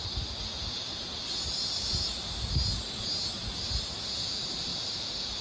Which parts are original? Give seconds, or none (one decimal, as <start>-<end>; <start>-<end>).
0.0-5.4